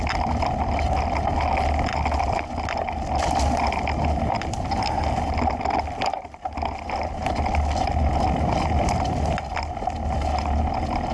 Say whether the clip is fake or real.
real